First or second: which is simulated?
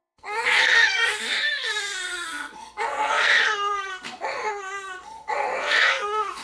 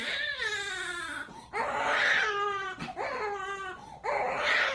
first